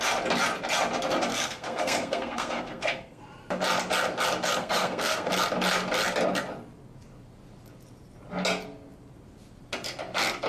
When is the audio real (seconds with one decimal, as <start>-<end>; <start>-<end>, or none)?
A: 0.0-1.3; 3.2-4.6; 5.3-10.5